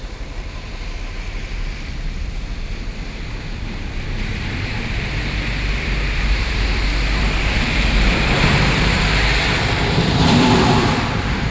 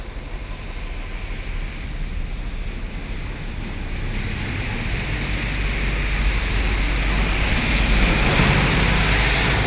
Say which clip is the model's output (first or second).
first